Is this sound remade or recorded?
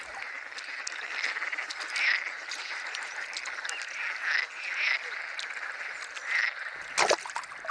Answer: recorded